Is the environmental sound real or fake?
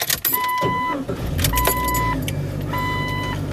real